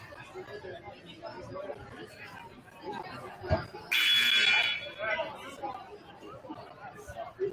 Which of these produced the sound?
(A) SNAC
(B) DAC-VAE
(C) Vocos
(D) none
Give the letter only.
D